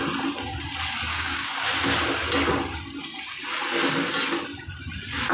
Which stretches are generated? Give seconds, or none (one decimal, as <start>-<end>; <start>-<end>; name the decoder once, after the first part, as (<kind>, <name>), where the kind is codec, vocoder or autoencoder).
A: 1.1-1.7 (codec, DAC)